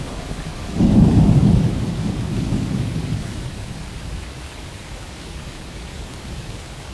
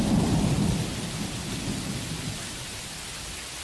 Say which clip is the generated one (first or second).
first